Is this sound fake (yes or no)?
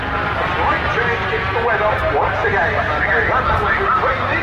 no